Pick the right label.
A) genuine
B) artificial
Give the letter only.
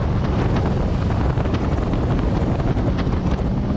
A